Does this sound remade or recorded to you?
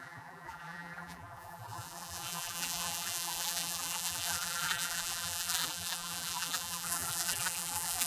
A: remade